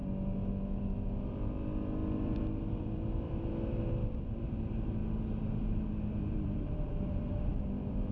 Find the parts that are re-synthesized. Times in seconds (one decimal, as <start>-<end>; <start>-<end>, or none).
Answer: 1.3-5.0; 6.2-8.1